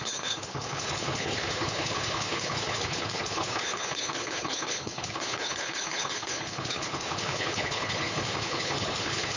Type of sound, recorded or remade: remade